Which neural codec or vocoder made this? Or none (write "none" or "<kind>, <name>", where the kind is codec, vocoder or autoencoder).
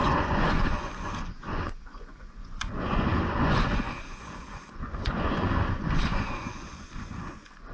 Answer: vocoder, Vocos